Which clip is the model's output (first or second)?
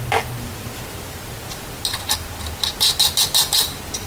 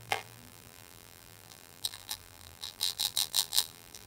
second